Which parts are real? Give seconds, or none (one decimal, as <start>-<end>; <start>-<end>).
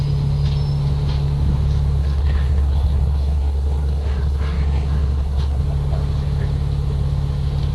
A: 0.0-2.0; 5.6-7.7